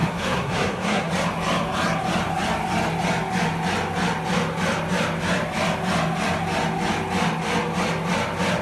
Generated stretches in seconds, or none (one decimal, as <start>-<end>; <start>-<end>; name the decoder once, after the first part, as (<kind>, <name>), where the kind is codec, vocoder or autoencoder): 0.0-1.1 (codec, SNAC)